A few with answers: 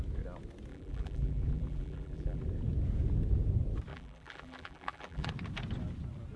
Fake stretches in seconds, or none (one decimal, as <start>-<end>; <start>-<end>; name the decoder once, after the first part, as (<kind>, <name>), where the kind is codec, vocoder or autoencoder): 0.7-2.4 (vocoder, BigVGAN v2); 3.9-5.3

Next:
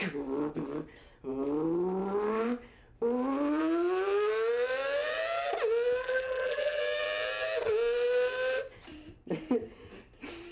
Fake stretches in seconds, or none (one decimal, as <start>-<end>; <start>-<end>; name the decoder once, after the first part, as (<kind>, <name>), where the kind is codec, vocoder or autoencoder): 6.0-6.8 (vocoder, BigVGAN v2)

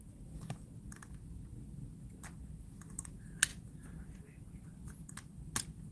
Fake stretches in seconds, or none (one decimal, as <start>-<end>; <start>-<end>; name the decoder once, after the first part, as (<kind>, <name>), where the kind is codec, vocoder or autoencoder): 3.5-4.6 (vocoder, BigVGAN v2)